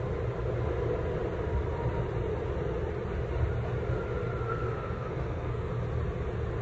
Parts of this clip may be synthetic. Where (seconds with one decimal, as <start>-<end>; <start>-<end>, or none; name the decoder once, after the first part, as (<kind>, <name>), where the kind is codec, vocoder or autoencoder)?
4.5-5.7 (codec, SNAC)